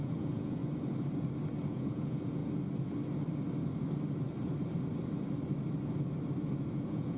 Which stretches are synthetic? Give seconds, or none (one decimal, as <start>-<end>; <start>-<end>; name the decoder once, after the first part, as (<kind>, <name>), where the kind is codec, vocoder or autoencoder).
0.0-0.6 (vocoder, Vocos); 1.7-2.4; 6.7-7.2